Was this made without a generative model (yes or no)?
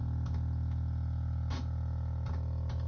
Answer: yes